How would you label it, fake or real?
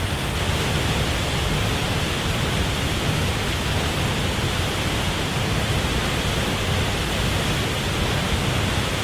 real